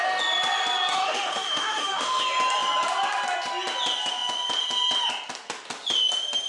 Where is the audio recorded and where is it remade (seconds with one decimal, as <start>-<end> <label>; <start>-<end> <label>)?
0.0-0.9 recorded; 0.9-2.2 remade; 2.2-6.5 recorded